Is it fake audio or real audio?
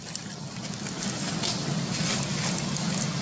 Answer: real